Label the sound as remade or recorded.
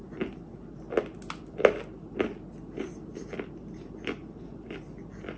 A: recorded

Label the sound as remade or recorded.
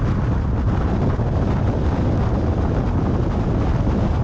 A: recorded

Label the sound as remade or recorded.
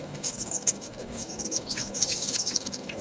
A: remade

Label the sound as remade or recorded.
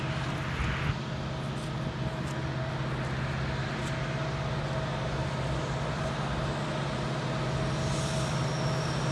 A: recorded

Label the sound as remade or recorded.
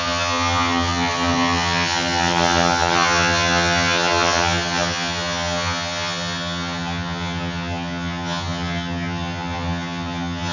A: remade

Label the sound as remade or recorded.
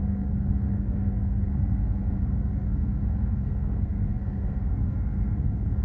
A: remade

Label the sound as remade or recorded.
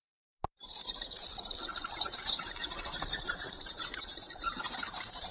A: remade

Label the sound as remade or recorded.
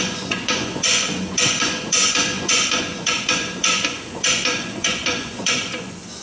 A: remade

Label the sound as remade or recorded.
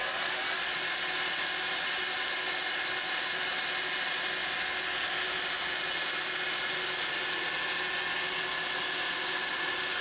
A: remade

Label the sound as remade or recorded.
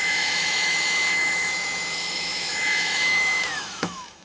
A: remade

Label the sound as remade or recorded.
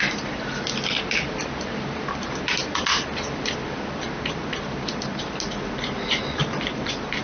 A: recorded